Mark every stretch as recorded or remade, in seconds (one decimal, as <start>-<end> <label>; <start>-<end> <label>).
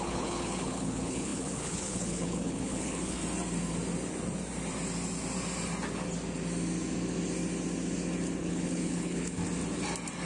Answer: 0.0-3.2 remade; 3.2-8.4 recorded; 8.4-9.4 remade; 9.4-10.3 recorded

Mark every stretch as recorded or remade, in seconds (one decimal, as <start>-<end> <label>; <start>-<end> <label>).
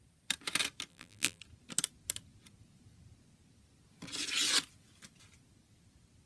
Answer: 0.0-0.9 recorded; 0.9-1.4 remade; 1.4-6.3 recorded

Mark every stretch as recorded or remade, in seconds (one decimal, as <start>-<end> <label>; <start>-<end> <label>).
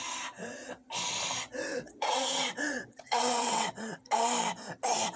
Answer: 0.0-1.7 recorded; 1.7-4.0 remade; 4.0-5.2 recorded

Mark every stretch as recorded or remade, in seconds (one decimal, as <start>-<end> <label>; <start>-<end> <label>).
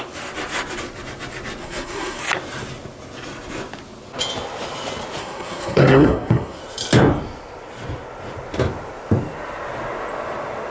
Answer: 0.0-1.6 recorded; 1.6-2.2 remade; 2.2-5.2 recorded; 5.2-6.6 remade; 6.6-10.7 recorded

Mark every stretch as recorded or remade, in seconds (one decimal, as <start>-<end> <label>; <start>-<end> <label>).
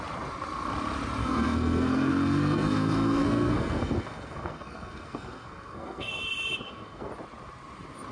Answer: 0.0-1.2 recorded; 1.2-6.1 remade; 6.1-6.6 recorded; 6.6-7.1 remade; 7.1-8.1 recorded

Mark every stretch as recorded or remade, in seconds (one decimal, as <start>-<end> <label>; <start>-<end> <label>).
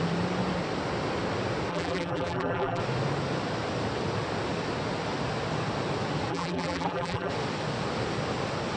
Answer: 0.0-1.7 recorded; 1.7-2.8 remade; 2.8-6.3 recorded; 6.3-7.3 remade; 7.3-8.8 recorded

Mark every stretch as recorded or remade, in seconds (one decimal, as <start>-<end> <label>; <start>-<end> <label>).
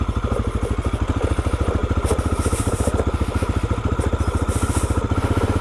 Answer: 0.0-1.8 recorded; 1.8-3.0 remade; 3.0-5.6 recorded